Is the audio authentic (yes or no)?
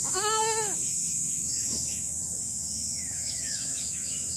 no